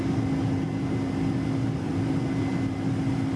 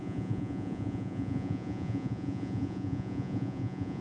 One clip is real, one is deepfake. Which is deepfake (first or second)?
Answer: second